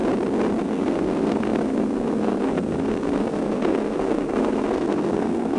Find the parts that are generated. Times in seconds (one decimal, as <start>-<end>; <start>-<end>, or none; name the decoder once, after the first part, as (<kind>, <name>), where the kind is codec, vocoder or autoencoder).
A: 0.6-5.6 (codec, SNAC)